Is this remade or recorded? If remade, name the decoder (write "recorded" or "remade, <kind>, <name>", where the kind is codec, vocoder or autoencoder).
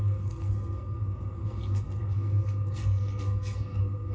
remade, codec, SNAC